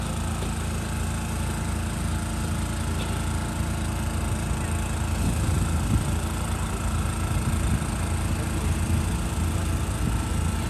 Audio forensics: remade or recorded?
recorded